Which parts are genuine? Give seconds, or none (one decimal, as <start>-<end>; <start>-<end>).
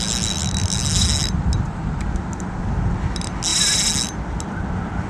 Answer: 0.0-5.1